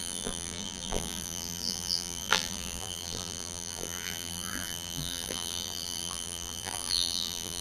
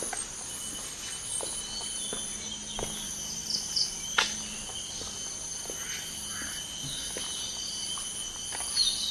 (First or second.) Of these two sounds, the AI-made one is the first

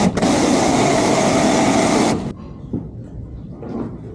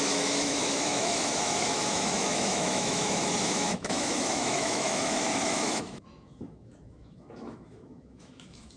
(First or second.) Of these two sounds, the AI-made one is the second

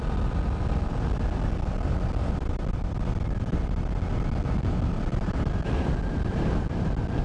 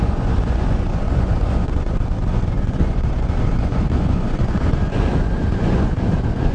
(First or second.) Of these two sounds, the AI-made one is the second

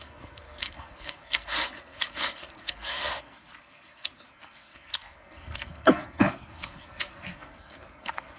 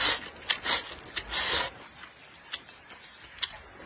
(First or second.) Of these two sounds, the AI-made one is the first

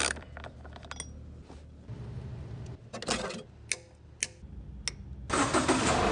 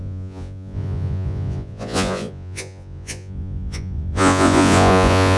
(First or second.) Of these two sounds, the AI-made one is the second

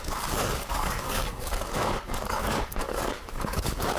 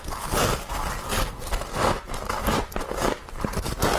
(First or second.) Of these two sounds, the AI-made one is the first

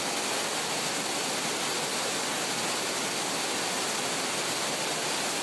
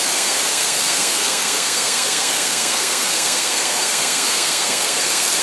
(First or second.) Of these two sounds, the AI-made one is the second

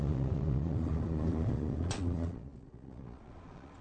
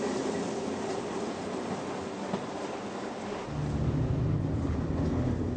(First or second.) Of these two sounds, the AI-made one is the first